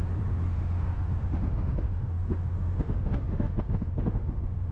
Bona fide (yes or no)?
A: no